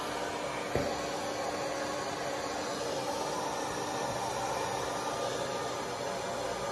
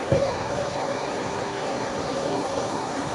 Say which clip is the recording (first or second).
first